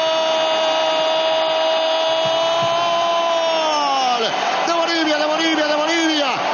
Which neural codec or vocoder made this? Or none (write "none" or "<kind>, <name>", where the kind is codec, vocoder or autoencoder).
none